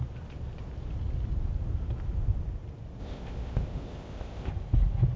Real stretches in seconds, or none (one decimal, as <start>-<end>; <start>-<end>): 0.0-3.0; 4.5-5.2